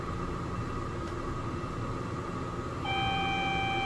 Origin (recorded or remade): recorded